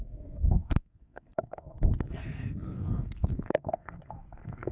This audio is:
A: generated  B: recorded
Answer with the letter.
A